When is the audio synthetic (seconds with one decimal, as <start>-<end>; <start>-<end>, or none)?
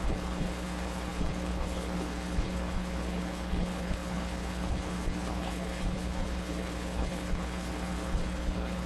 0.0-8.9